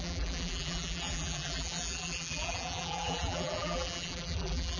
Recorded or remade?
remade